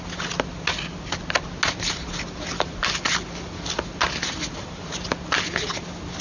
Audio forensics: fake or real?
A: real